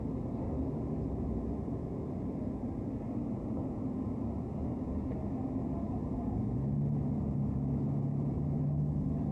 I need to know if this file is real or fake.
real